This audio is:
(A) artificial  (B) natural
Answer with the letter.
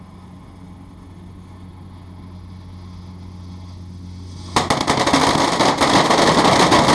B